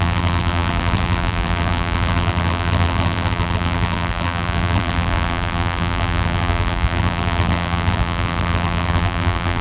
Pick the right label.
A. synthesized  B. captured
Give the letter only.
A